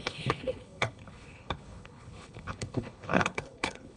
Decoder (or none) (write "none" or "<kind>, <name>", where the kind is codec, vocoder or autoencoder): codec, HILCodec